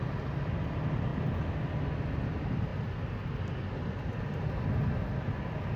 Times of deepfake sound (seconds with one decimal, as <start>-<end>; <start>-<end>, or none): none